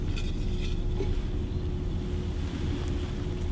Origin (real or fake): real